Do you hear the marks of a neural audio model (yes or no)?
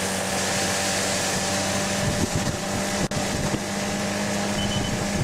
no